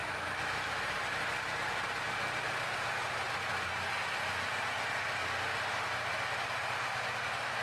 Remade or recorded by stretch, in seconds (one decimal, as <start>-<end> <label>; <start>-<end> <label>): 0.0-0.7 remade; 0.7-7.6 recorded